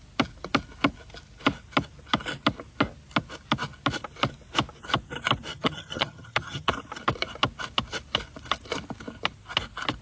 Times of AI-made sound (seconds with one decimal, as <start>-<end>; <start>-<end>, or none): 5.5-6.7